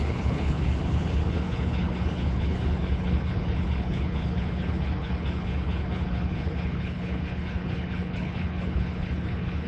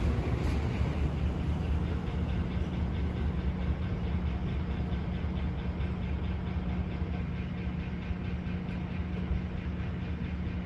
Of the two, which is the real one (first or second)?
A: second